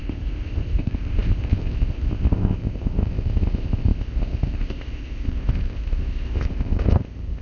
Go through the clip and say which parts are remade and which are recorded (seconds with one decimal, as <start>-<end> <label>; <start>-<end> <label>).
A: 0.0-7.4 remade